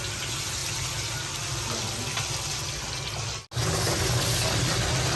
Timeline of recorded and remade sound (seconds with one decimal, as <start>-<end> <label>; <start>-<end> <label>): 0.0-3.6 recorded; 3.6-4.7 remade; 4.7-5.2 recorded

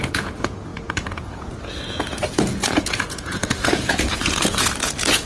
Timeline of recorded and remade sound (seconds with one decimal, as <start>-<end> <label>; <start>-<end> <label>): 0.0-5.3 remade

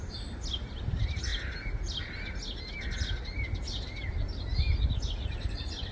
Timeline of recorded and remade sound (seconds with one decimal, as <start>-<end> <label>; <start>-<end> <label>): 0.0-5.9 recorded